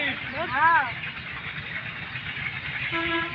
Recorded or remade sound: recorded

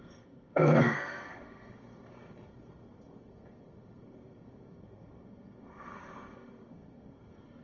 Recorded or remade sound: remade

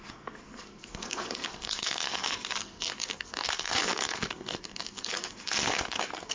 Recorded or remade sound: remade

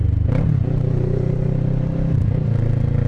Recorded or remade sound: recorded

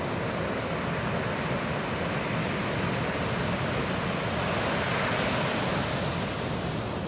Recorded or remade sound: recorded